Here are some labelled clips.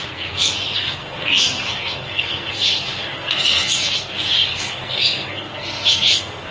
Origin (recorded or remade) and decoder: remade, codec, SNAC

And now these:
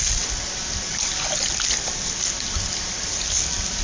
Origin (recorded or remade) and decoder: recorded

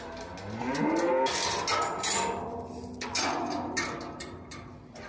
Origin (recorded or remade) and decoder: recorded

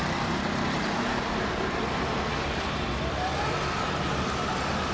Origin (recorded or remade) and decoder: recorded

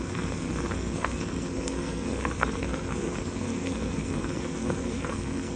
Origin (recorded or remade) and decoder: remade, codec, SNAC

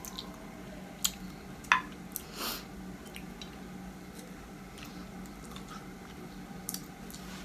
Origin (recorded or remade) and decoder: recorded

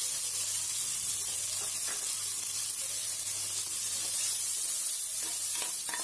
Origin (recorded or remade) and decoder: recorded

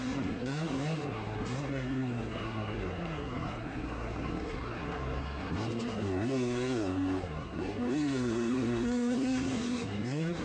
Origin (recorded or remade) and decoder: remade, codec, SNAC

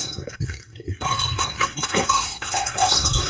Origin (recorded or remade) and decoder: remade, codec, SNAC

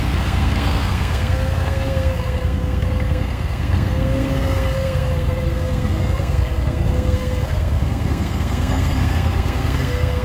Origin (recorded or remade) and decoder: remade, codec, SNAC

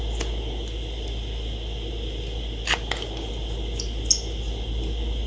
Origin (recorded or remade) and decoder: recorded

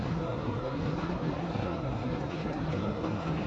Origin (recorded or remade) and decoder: remade, codec, SNAC